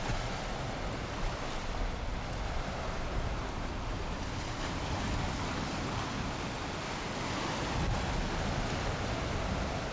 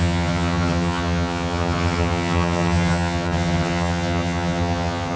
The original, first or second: first